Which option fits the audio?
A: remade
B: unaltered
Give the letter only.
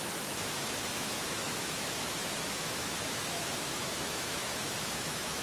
A